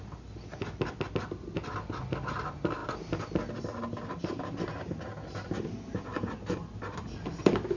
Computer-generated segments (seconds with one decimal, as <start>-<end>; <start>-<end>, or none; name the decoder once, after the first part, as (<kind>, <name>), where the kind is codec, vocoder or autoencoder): none